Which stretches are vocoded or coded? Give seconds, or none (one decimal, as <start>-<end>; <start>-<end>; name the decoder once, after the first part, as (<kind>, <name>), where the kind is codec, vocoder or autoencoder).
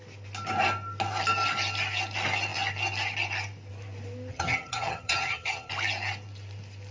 4.3-5.7 (vocoder, HiFi-GAN)